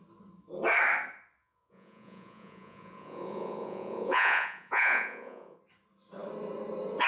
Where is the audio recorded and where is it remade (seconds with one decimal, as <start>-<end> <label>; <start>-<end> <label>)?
0.0-1.4 recorded; 1.4-5.6 remade; 5.6-7.1 recorded